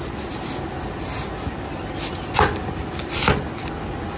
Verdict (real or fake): real